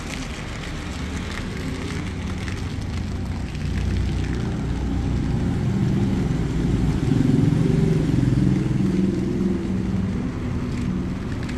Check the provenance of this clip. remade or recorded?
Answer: recorded